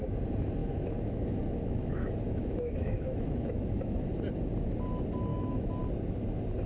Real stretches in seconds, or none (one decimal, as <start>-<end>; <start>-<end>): 0.0-0.6; 4.0-5.3; 5.8-6.7